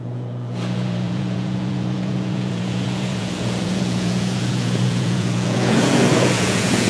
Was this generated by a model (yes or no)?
yes